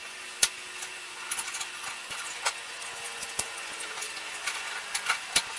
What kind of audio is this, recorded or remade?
remade